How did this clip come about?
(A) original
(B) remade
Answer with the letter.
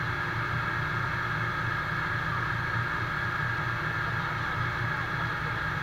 A